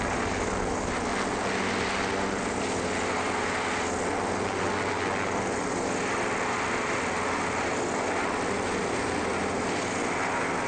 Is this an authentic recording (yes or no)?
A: yes